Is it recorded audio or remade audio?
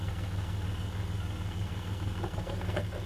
remade